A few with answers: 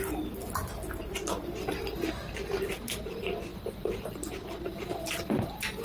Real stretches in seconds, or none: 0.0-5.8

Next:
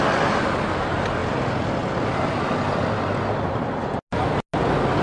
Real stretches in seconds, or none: 0.0-5.0

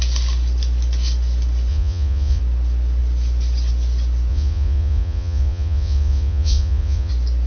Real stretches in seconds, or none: 0.0-1.7; 2.4-4.3; 7.1-7.5

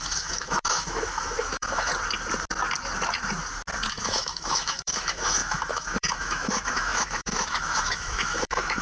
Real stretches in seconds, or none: 1.9-3.9

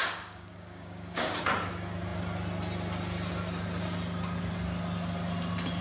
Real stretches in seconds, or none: 1.4-5.8

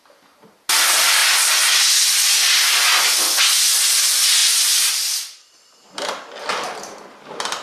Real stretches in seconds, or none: 0.0-7.6